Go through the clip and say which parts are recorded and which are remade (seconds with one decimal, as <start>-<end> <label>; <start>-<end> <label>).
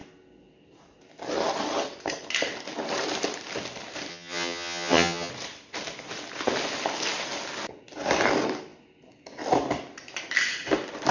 0.0-4.1 recorded; 4.1-5.3 remade; 5.3-11.1 recorded